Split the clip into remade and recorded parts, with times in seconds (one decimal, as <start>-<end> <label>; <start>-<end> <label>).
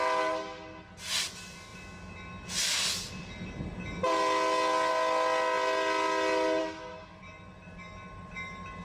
0.0-6.6 recorded; 6.6-7.2 remade; 7.2-8.8 recorded